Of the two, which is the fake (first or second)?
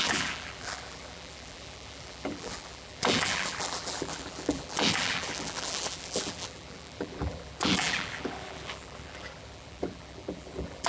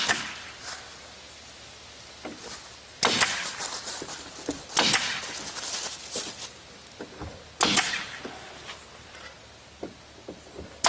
first